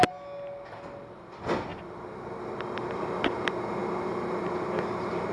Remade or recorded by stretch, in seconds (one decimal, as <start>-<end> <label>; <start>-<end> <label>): 0.0-1.7 recorded; 1.7-2.4 remade; 2.4-5.3 recorded